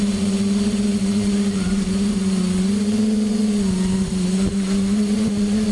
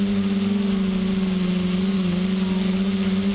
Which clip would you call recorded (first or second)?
second